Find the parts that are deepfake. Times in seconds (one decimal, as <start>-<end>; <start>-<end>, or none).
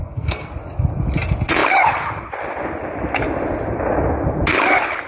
0.0-0.5